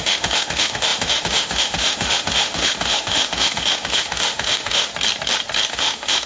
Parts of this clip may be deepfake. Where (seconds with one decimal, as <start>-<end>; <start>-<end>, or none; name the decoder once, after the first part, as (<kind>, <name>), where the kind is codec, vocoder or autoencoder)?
0.0-4.9 (autoencoder, DAC-VAE); 5.7-6.3